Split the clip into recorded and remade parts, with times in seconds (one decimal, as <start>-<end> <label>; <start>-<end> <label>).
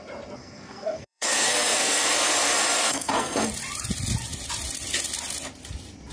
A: 0.0-0.4 recorded; 0.4-2.1 remade; 2.1-2.8 recorded; 2.8-3.5 remade; 3.5-6.1 recorded